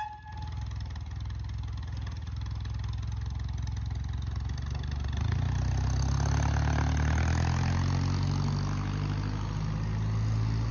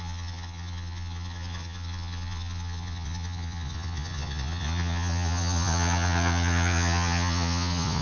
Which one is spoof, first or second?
second